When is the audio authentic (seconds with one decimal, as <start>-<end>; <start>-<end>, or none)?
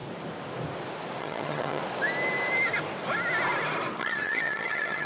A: 0.0-1.2; 1.8-4.0